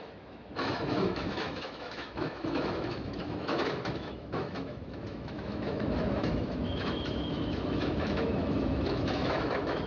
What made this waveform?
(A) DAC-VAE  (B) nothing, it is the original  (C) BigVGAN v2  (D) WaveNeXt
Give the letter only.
A